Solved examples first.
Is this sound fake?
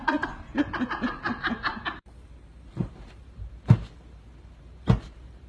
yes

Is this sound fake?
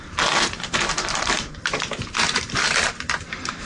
yes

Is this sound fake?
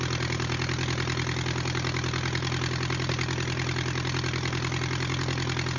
no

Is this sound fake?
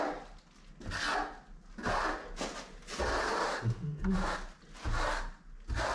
no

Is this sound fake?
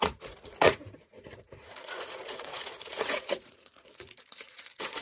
yes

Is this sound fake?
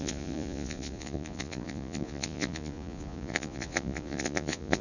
yes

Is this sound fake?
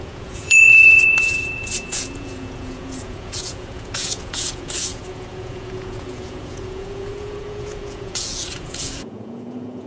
yes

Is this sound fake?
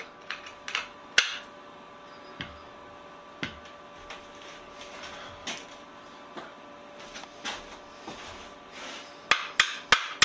no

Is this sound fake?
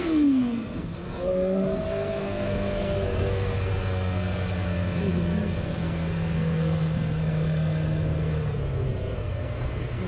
yes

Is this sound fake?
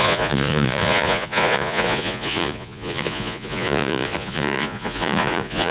yes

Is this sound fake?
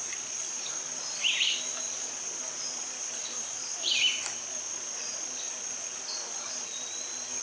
no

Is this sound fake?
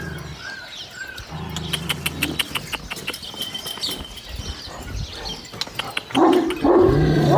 no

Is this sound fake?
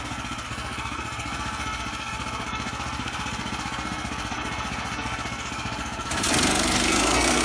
yes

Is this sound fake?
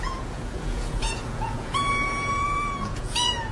yes